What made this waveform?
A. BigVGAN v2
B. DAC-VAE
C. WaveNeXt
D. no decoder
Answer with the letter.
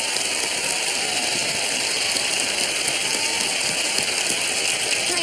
D